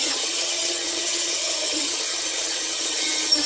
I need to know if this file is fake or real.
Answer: fake